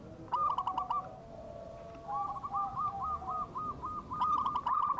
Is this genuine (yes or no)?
yes